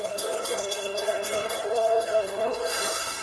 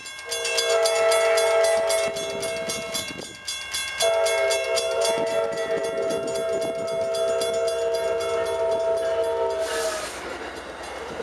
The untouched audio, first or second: second